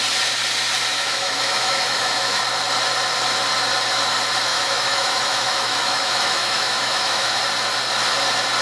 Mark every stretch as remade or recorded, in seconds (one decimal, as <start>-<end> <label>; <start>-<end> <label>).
0.0-0.9 recorded; 0.9-2.4 remade; 2.4-4.5 recorded; 4.5-7.4 remade; 7.4-8.6 recorded

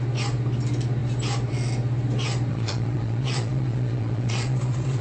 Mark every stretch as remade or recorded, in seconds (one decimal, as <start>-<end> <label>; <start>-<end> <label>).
0.0-2.5 recorded; 2.5-5.0 remade

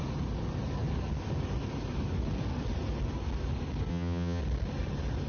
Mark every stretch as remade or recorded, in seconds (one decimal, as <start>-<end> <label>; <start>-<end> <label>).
0.0-3.9 recorded; 3.9-4.4 remade; 4.4-5.3 recorded

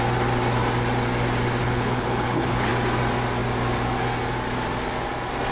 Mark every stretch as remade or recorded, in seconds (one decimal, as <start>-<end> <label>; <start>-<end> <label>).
0.0-1.6 recorded; 1.6-2.7 remade; 2.7-5.5 recorded

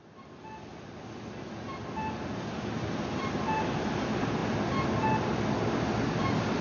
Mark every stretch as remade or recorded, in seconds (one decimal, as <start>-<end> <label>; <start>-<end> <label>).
0.0-6.6 recorded

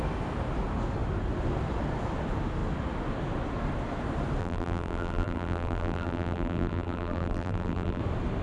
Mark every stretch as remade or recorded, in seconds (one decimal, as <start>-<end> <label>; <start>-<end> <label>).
0.0-4.4 recorded; 4.4-8.0 remade; 8.0-8.4 recorded

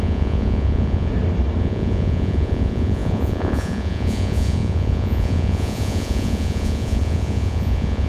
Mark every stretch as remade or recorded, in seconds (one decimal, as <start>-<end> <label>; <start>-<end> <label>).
0.0-1.1 remade; 1.1-1.6 recorded; 1.6-8.1 remade

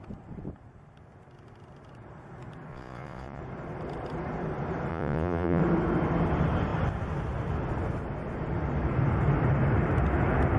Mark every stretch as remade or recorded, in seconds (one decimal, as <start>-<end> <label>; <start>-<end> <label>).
0.0-2.7 recorded; 2.7-3.4 remade; 3.4-4.9 recorded; 4.9-5.6 remade; 5.6-10.6 recorded